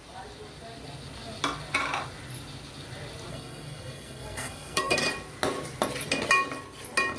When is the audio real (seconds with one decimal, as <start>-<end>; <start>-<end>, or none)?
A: 0.0-3.3; 5.0-7.2